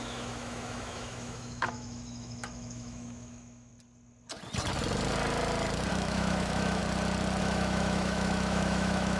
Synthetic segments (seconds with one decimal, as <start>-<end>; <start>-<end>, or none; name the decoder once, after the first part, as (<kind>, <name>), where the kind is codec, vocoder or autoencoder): 0.0-3.7 (autoencoder, DAC-VAE); 5.9-6.8; 7.4-9.2